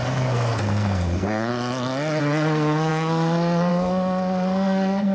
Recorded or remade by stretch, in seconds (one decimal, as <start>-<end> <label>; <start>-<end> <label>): 0.0-1.5 remade; 1.5-2.2 recorded; 2.2-5.1 remade